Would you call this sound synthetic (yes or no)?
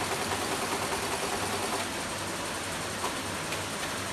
no